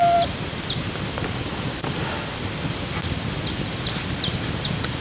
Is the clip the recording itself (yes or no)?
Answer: yes